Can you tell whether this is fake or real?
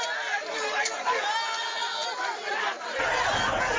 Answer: real